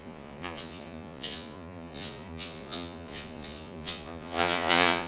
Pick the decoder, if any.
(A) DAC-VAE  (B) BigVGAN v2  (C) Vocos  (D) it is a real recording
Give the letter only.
C